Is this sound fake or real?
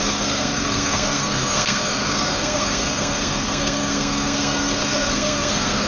fake